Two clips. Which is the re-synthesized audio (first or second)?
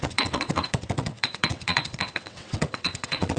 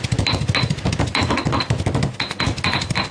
first